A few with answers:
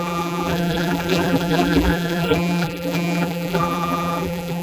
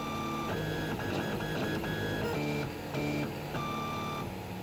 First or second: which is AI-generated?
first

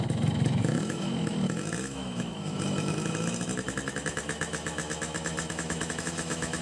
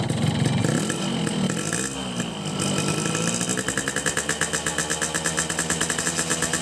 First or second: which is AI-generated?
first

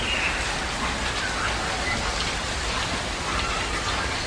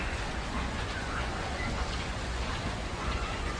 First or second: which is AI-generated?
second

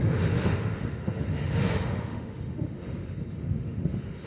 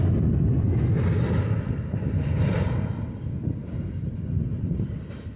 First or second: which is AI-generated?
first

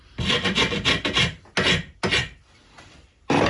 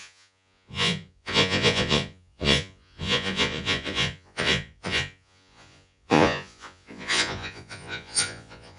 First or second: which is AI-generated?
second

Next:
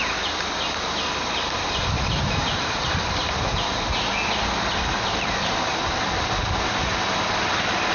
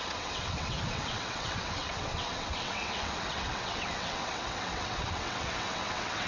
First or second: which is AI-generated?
second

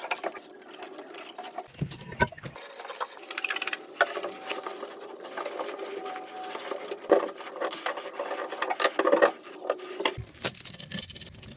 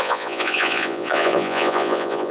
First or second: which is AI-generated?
second